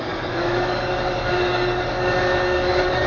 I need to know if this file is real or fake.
fake